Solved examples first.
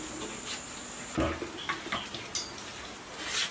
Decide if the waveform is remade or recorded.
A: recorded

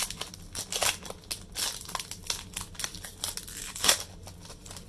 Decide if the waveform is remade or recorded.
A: recorded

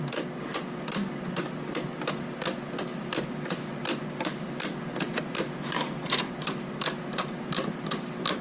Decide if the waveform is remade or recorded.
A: recorded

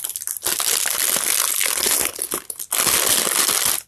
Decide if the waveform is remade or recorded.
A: recorded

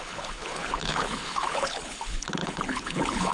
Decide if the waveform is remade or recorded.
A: remade